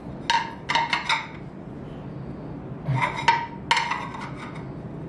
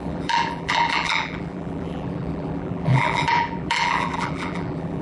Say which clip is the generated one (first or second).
second